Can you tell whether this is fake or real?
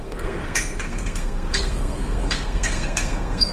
fake